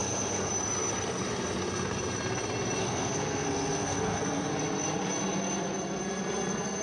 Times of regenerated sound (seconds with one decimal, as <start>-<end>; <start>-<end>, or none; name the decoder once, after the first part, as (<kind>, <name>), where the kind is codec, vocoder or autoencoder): 0.0-0.5 (codec, SNAC); 2.8-4.5